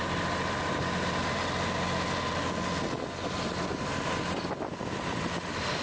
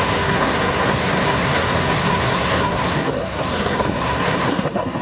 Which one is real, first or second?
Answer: first